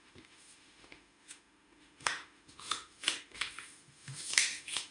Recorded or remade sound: remade